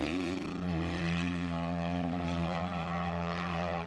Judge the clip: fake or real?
fake